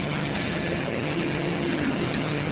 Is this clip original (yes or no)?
no